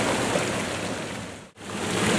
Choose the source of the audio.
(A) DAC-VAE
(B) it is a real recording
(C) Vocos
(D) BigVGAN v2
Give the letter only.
B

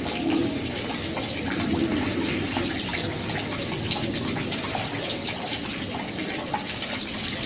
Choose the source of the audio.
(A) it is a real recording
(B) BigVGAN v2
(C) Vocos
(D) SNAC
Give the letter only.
A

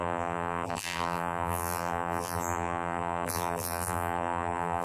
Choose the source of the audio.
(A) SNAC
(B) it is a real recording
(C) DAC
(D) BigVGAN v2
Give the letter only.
D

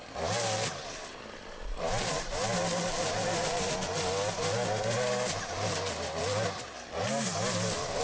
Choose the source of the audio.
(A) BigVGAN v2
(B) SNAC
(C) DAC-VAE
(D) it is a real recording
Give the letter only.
D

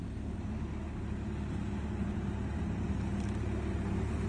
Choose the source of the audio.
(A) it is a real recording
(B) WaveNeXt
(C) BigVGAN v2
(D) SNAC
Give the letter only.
A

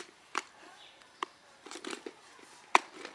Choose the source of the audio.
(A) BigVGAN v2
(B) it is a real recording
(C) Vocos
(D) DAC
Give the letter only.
A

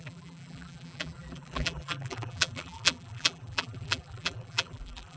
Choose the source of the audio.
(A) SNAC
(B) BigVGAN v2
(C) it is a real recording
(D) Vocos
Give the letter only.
B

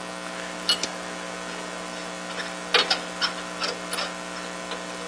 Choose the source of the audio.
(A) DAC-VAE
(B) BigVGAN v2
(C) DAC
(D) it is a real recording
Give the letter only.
D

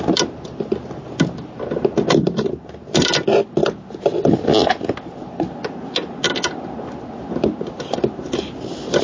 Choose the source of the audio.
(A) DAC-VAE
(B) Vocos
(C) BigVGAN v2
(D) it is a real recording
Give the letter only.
D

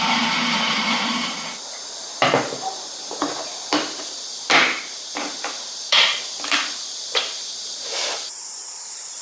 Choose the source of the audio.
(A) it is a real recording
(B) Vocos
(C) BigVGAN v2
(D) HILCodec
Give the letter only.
C